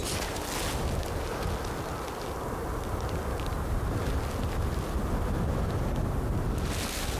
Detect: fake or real real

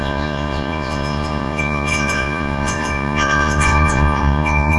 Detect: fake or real fake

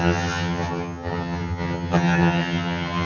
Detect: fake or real fake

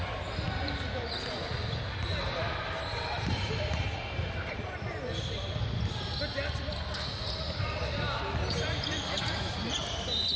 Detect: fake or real real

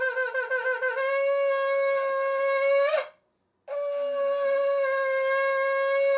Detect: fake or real real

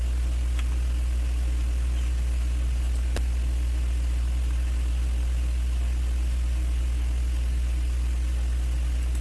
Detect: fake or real real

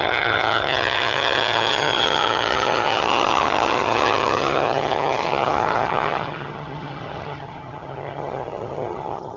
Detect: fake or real fake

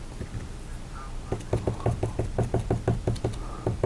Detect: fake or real real